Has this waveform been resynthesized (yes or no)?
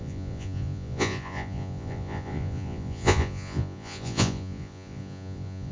yes